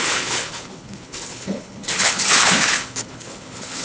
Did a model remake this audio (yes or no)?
yes